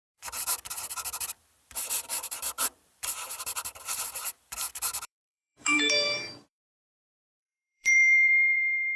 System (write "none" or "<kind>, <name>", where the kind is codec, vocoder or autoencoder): vocoder, BigVGAN v2